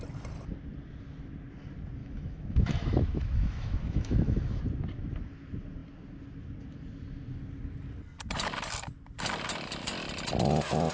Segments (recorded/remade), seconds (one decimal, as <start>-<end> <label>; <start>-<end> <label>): 0.0-2.0 recorded; 2.0-4.6 remade; 4.6-10.9 recorded